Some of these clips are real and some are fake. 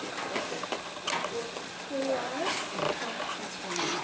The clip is real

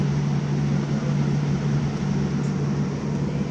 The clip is real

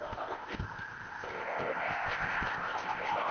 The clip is fake